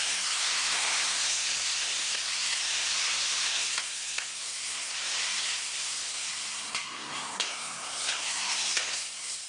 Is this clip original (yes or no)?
no